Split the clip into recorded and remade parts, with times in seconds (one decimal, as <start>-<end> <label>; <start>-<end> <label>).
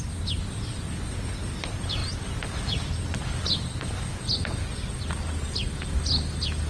0.0-6.7 recorded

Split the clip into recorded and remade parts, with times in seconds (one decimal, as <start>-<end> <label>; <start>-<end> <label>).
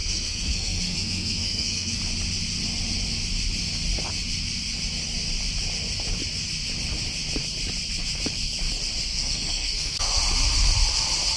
0.0-2.0 remade; 2.0-9.1 recorded; 9.1-10.2 remade; 10.2-11.4 recorded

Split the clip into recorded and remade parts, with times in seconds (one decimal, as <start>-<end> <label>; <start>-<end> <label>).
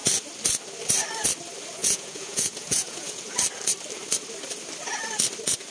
0.0-1.8 recorded; 1.8-3.2 remade; 3.2-5.7 recorded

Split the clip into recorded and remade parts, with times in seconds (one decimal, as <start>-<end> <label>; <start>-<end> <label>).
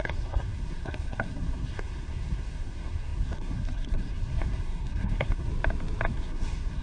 0.0-5.5 remade; 5.5-6.1 recorded; 6.1-6.8 remade